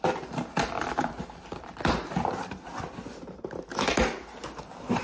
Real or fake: real